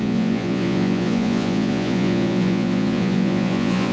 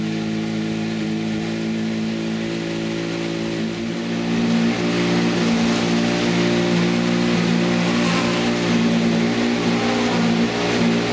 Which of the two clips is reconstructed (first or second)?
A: first